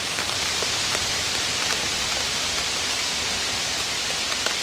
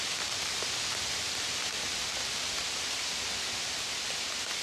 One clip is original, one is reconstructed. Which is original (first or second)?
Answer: second